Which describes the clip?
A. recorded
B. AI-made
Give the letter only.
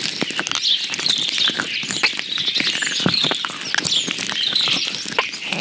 A